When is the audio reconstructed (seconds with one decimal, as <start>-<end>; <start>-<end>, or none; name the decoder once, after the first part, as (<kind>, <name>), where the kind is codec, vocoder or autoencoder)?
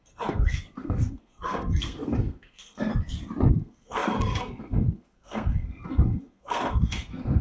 0.0-2.9 (codec, SNAC); 3.5-7.4